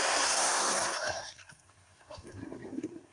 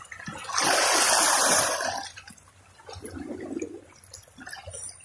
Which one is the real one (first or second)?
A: second